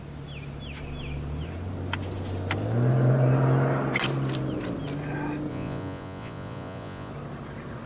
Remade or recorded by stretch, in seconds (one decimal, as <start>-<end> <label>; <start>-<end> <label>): 0.0-5.5 recorded; 5.5-7.1 remade; 7.1-7.9 recorded